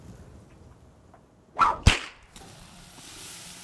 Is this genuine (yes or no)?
yes